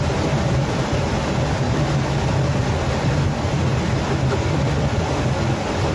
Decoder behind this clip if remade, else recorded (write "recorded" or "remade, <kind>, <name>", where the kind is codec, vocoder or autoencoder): recorded